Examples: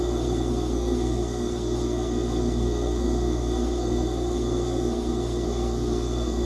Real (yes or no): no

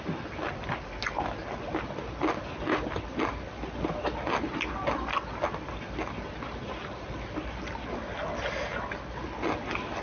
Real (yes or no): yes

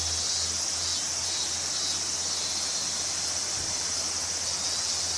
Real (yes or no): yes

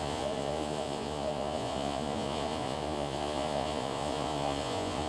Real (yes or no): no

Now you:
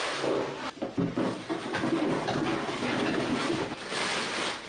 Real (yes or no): no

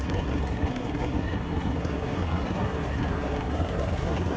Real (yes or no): no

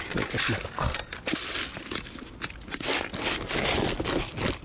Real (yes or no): yes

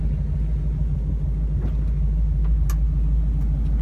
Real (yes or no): yes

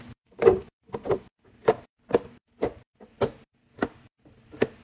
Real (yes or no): yes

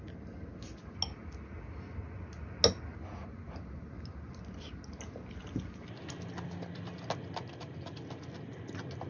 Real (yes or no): yes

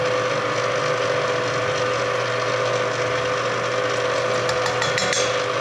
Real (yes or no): yes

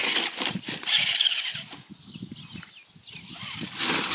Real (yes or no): yes